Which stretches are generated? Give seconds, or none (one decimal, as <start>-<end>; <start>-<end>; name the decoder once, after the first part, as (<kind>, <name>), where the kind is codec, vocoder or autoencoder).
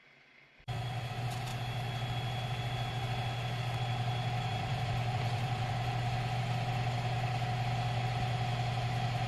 0.0-1.1 (vocoder, BigVGAN v2); 4.5-5.7